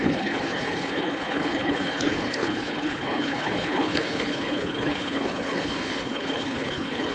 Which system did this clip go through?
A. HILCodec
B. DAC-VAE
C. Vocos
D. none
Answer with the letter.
A